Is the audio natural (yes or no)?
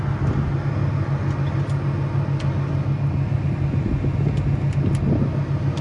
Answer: yes